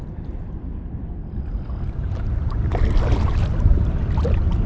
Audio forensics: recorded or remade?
recorded